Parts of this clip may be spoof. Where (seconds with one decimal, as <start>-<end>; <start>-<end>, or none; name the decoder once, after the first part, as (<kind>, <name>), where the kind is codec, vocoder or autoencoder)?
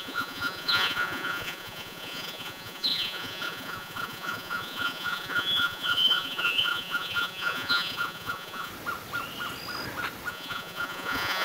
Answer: 0.0-8.7 (vocoder, Vocos); 10.3-11.4